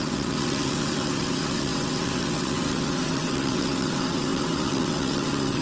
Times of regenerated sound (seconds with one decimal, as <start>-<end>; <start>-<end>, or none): 0.0-5.6